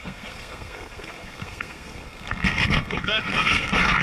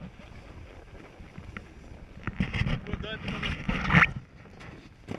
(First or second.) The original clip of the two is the second